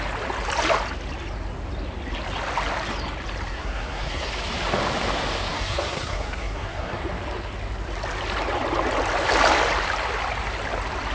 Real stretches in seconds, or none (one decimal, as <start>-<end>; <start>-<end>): 0.0-3.5; 4.3-5.5; 7.0-11.1